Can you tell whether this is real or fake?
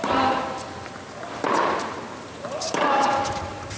real